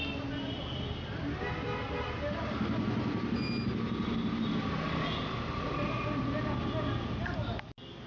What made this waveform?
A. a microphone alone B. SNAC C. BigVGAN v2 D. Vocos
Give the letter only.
A